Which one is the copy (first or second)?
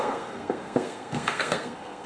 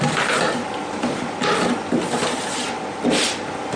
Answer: first